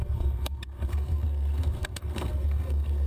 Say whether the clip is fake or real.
fake